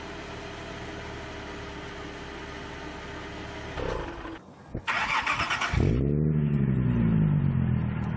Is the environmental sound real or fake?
real